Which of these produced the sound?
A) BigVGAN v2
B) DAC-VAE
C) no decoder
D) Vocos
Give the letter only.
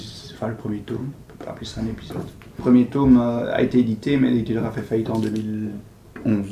C